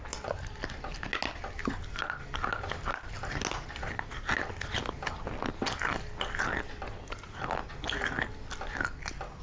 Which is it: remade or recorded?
recorded